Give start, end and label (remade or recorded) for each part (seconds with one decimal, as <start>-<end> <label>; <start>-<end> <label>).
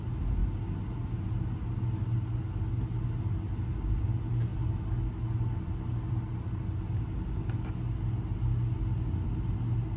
0.0-10.0 recorded